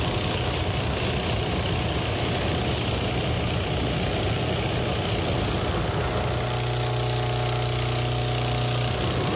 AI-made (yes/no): no